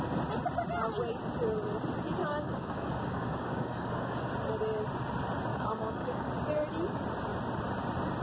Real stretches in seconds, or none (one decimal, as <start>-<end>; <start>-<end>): 0.0-2.2; 4.3-5.5; 6.3-8.2